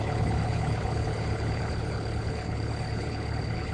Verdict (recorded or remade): remade